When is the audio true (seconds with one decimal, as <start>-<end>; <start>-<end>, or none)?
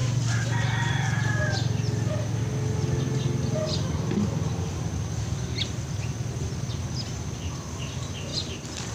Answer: 0.0-8.9